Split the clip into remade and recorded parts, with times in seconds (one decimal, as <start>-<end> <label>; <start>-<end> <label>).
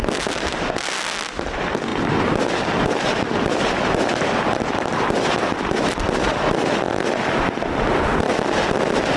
0.0-9.2 recorded